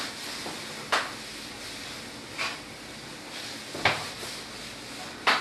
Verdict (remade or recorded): recorded